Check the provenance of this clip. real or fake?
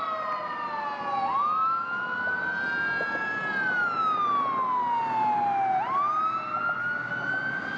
real